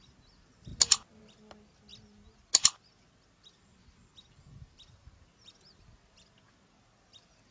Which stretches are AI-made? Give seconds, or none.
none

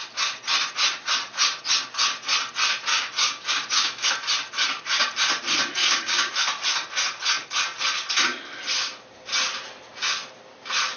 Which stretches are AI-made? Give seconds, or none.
2.9-4.1 (codec, DAC); 5.8-6.3

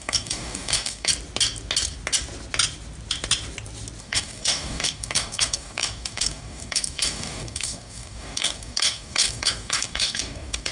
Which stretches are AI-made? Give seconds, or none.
0.0-1.1 (codec, DAC); 4.0-10.7

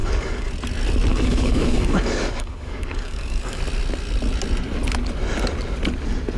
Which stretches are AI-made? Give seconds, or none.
0.0-0.5 (codec, DAC); 1.1-3.6

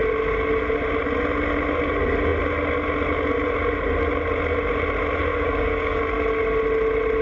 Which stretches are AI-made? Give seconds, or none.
5.3-6.0 (codec, DAC)

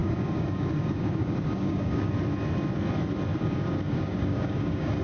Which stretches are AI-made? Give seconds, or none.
0.0-2.1 (codec, DAC); 3.3-5.0

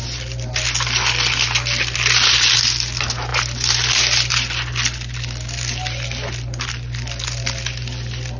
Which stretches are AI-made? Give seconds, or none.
none

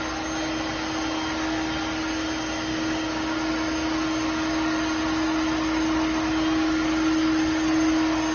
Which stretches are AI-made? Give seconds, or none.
2.7-3.5 (codec, DAC)